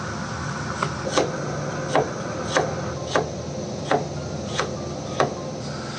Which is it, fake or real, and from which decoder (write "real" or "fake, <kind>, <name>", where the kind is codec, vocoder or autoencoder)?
real